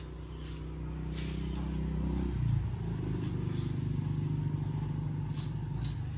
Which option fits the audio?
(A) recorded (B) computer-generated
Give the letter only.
A